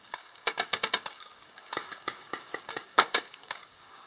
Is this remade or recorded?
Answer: remade